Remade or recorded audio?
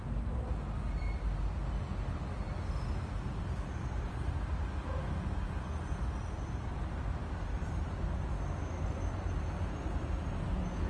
recorded